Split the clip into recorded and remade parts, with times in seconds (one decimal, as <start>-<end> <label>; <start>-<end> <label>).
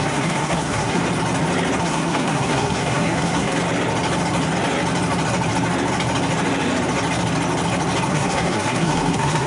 0.0-1.0 remade; 1.0-1.8 recorded; 1.8-3.6 remade; 3.6-8.1 recorded; 8.1-9.5 remade